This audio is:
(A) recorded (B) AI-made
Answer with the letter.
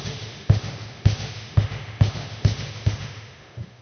B